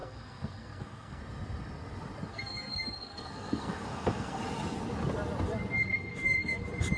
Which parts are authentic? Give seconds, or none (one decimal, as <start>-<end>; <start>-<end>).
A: 1.2-2.3; 4.4-5.9; 6.6-7.0